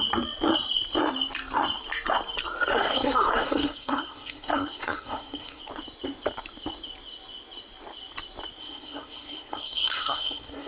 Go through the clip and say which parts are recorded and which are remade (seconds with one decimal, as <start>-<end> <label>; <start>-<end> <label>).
0.0-2.7 recorded; 2.7-5.6 remade; 5.6-8.6 recorded; 8.6-10.7 remade